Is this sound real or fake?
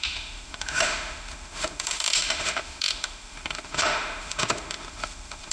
fake